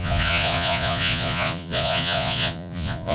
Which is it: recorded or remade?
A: remade